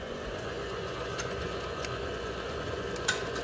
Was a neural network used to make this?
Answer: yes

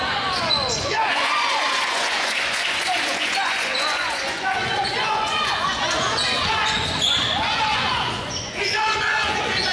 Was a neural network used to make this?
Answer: yes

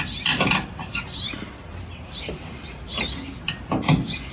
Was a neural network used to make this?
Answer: yes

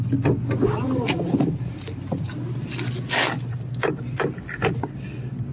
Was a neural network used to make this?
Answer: no